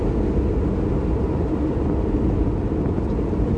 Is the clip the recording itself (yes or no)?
yes